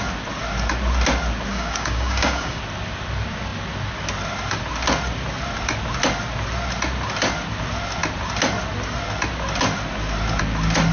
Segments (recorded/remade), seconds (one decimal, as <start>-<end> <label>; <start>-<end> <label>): 0.0-1.5 recorded; 1.5-2.6 remade; 2.6-10.9 recorded